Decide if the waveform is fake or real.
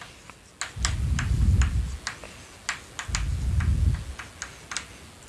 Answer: real